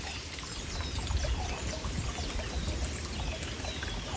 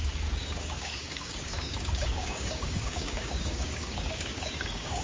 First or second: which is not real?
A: second